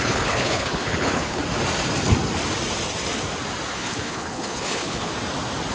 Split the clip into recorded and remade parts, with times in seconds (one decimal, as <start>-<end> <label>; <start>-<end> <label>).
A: 0.0-1.4 remade; 1.4-3.7 recorded; 3.7-5.1 remade; 5.1-5.7 recorded